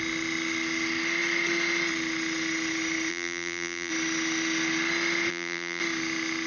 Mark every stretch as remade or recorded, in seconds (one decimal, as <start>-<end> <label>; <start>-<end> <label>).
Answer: 0.0-3.1 recorded; 3.1-3.9 remade; 3.9-5.3 recorded; 5.3-5.8 remade; 5.8-6.5 recorded